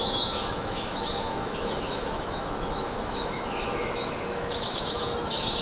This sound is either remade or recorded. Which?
remade